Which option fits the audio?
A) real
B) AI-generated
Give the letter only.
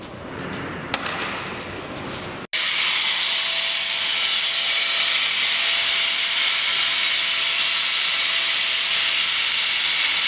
A